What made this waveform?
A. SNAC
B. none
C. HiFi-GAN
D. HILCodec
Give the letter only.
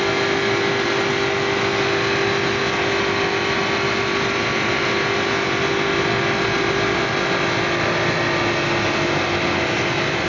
B